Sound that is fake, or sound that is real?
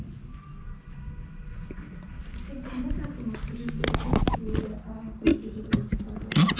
real